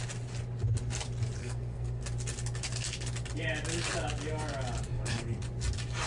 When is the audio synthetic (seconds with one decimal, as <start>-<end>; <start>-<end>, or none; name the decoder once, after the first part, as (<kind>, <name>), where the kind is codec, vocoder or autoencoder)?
1.4-2.0 (codec, SNAC); 4.9-5.4